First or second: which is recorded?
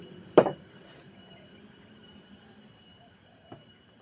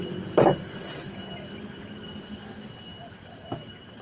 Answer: second